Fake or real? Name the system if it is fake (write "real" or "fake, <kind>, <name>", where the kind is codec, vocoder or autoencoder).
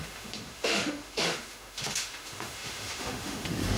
fake, autoencoder, DAC-VAE